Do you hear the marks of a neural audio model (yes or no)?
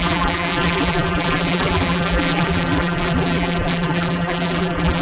yes